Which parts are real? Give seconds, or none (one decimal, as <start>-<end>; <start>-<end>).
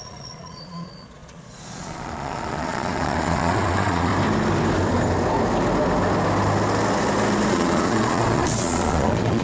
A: 4.1-7.5